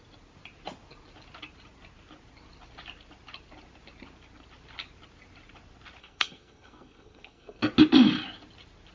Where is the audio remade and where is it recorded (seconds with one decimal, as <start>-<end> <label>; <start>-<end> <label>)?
0.0-6.0 recorded; 6.0-7.6 remade; 7.6-8.9 recorded